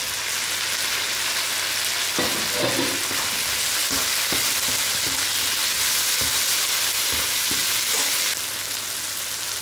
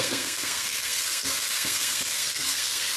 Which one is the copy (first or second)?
second